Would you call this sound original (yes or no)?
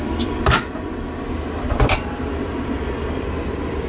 no